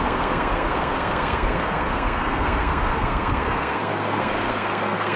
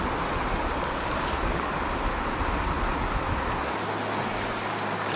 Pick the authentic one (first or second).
second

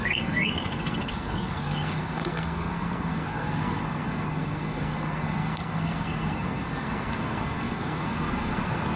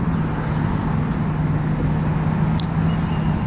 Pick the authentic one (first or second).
second